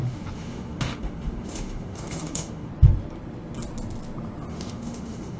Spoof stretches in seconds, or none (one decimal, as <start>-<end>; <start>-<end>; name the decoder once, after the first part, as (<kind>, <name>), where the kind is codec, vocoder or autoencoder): 0.0-2.7 (autoencoder, DAC-VAE); 4.5-5.4

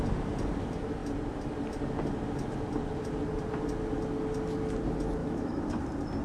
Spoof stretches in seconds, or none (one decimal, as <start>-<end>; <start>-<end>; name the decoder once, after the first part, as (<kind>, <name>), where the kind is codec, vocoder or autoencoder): 5.2-5.8 (autoencoder, DAC-VAE)

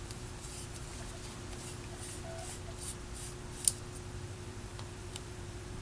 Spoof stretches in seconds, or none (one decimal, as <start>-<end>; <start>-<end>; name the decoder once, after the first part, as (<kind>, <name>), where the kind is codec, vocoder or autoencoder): 0.0-0.9 (vocoder, BigVGAN v2); 4.2-5.8

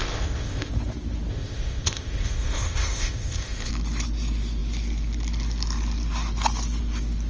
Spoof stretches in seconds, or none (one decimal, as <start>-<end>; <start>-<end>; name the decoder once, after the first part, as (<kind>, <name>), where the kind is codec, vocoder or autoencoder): 0.0-0.7 (codec, ZipCodec); 1.3-3.7